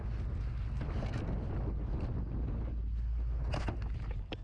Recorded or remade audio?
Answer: recorded